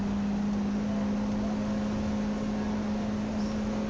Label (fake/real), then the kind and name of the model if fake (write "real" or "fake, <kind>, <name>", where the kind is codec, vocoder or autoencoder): real